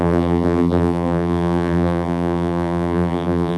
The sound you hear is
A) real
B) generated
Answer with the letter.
B